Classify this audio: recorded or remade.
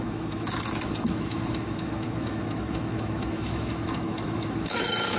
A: remade